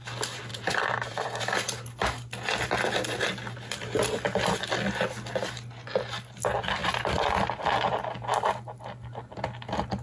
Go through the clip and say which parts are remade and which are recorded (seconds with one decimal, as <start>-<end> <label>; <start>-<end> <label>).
0.0-0.5 recorded; 0.5-1.4 remade; 1.4-10.0 recorded